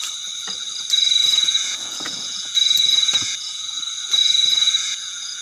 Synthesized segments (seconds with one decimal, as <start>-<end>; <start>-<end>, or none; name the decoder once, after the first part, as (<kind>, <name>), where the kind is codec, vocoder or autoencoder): 1.2-3.8 (vocoder, Vocos); 4.2-5.4